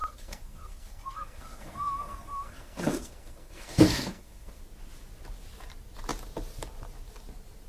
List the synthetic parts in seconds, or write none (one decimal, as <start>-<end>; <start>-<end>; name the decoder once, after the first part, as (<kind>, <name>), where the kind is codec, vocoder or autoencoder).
0.0-4.6 (codec, SNAC)